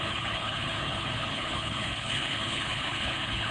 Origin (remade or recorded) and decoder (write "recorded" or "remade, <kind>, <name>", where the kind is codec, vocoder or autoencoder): remade, codec, HILCodec